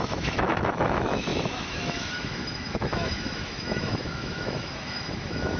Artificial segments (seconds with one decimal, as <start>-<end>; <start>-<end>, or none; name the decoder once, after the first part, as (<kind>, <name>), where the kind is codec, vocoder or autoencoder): 0.0-5.6 (autoencoder, DAC-VAE)